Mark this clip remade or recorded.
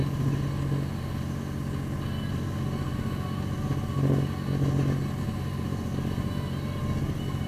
recorded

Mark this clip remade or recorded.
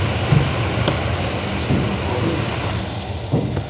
recorded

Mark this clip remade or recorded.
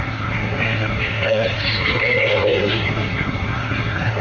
remade